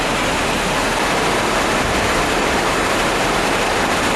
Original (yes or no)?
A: yes